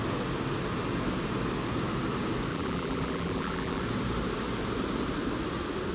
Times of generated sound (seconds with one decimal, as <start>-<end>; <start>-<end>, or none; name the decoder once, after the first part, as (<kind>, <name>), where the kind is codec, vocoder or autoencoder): 2.5-3.8 (vocoder, BigVGAN v2)